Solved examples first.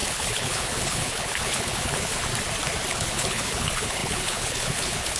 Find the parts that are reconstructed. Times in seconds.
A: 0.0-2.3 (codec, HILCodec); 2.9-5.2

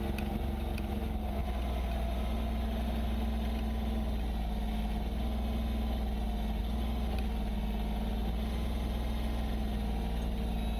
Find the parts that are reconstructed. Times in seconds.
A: none

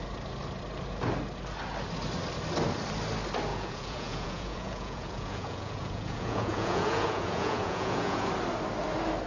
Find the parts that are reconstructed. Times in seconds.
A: 3.5-8.3 (vocoder, Vocos)